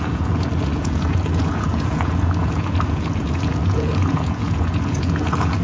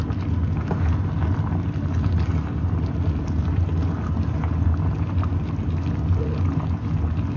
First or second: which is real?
second